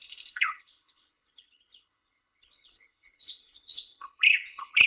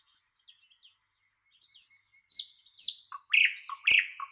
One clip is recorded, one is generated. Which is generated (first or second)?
first